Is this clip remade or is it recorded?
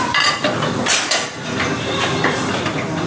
remade